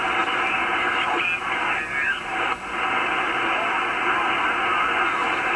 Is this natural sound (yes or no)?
yes